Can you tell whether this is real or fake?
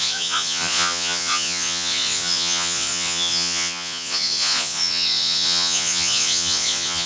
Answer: fake